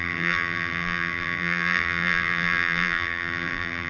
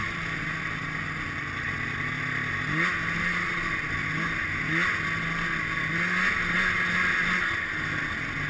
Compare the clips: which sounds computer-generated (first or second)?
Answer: first